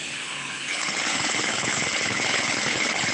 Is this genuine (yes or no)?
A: no